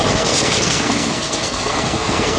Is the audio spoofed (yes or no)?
yes